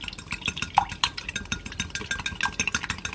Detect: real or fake real